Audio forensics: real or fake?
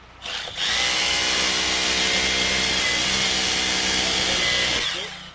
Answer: real